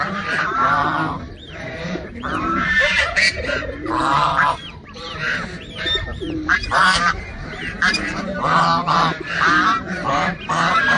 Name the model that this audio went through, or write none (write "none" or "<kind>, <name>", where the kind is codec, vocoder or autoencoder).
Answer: vocoder, BigVGAN v2